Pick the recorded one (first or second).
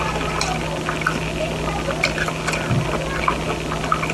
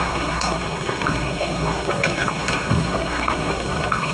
first